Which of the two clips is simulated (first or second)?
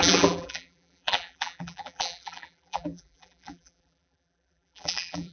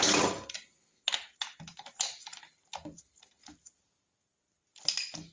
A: first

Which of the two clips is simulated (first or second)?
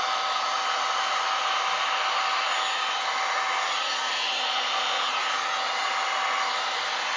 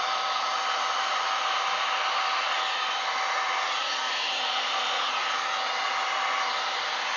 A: second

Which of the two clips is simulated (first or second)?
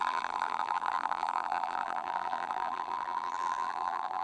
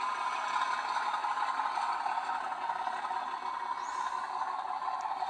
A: first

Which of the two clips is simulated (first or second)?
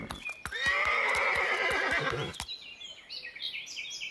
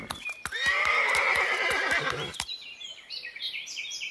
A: second